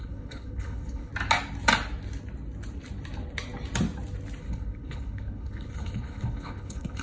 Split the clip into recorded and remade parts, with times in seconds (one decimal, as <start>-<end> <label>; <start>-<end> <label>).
0.0-1.1 remade; 1.1-4.4 recorded; 4.4-7.0 remade